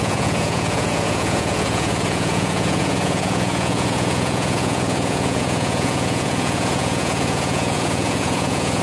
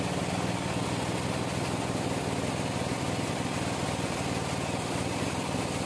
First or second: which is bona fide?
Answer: second